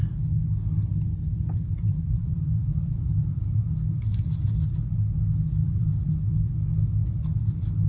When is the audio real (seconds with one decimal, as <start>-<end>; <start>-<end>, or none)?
0.0-1.8; 3.6-4.1; 4.8-5.6; 6.1-7.9